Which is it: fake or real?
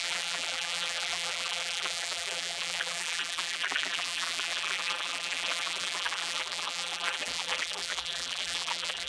fake